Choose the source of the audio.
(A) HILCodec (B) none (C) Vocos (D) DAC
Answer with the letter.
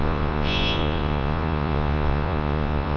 C